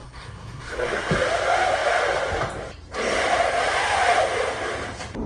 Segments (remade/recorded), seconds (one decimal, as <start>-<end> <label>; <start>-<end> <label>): 0.0-1.1 remade; 1.1-5.3 recorded